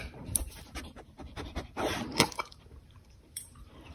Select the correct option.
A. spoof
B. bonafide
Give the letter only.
A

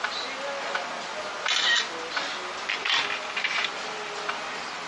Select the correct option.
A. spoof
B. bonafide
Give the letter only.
B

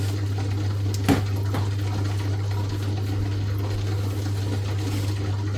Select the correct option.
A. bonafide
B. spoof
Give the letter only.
A